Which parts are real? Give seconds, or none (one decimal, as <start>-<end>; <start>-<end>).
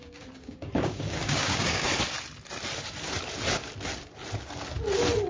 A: 1.9-5.3